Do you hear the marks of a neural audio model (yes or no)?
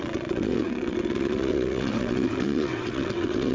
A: yes